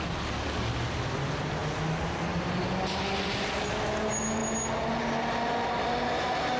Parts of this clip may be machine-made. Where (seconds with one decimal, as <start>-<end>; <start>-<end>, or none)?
none